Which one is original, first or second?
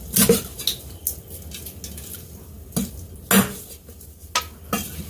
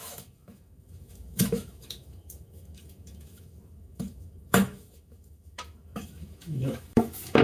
first